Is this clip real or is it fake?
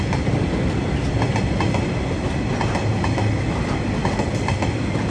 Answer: real